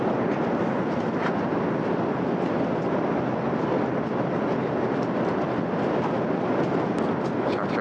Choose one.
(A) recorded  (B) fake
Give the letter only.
A